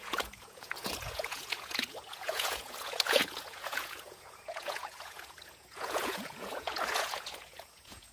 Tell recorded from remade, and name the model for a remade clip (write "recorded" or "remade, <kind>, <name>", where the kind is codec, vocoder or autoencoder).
remade, vocoder, Vocos